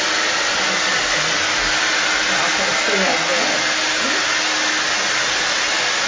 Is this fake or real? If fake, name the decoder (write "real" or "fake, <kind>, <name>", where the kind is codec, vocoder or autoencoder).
real